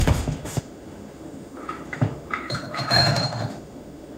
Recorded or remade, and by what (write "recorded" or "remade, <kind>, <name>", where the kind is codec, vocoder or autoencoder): remade, autoencoder, DAC-VAE